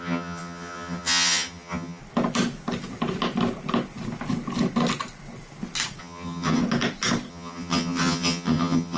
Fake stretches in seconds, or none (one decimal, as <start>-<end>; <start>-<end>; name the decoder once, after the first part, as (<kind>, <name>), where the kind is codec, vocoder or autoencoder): 0.0-2.0 (vocoder, HiFi-GAN); 6.0-6.6; 7.3-9.0